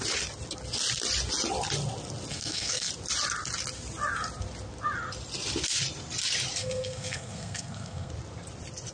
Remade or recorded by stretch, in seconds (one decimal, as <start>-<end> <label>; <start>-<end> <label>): 0.0-2.3 recorded; 2.3-2.9 remade; 2.9-6.6 recorded; 6.6-8.1 remade; 8.1-8.9 recorded